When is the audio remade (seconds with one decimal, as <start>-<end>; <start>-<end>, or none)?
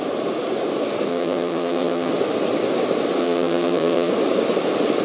1.1-2.1; 3.2-4.1